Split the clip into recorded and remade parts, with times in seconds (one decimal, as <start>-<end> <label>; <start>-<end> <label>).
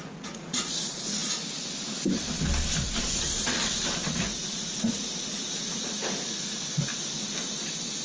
0.0-1.2 remade; 1.2-4.2 recorded; 4.2-6.9 remade; 6.9-8.0 recorded